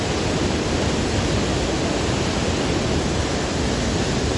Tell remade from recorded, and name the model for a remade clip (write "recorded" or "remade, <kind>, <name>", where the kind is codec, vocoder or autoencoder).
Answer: recorded